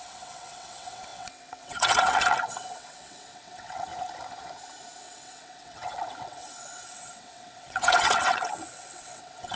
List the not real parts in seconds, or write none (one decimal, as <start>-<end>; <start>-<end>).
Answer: 0.0-3.9; 5.0-9.6